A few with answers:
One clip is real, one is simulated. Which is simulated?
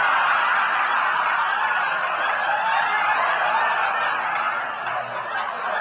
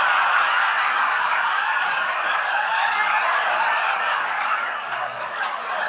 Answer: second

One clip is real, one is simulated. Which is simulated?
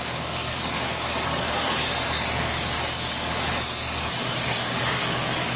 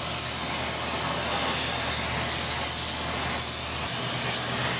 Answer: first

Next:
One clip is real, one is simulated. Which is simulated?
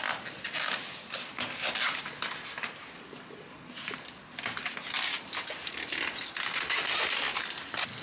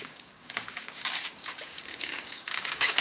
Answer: second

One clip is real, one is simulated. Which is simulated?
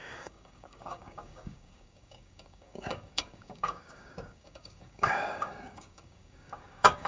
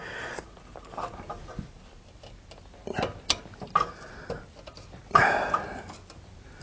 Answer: first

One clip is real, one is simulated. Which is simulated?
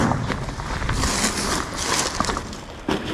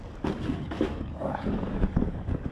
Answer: second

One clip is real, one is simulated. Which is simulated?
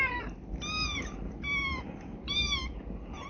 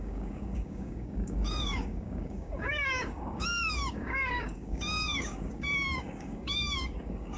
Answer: second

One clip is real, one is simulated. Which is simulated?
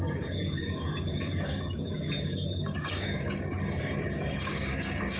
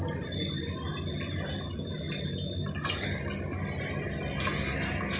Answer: first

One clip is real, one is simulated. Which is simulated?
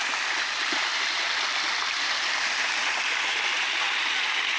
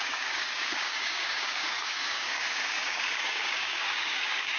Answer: second